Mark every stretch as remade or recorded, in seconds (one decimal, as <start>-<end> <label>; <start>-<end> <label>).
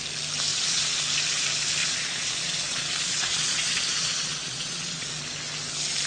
0.0-0.5 recorded; 0.5-1.0 remade; 1.0-1.8 recorded; 1.8-5.2 remade; 5.2-6.1 recorded